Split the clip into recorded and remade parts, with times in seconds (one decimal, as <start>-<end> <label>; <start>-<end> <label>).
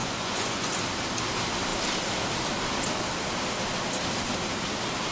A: 0.0-0.7 remade; 0.7-5.1 recorded